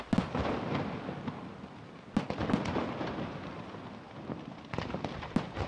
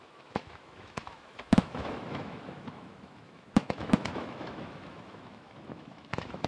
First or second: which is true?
first